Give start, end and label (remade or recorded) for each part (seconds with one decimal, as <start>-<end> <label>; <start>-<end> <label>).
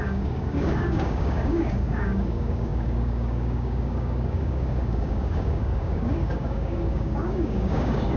0.0-8.2 remade